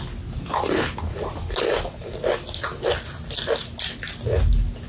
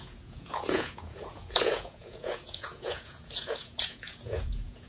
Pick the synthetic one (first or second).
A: second